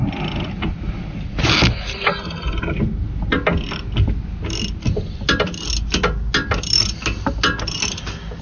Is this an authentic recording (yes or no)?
yes